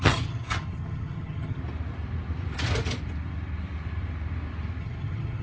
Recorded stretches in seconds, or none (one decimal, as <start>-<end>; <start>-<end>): 1.6-4.8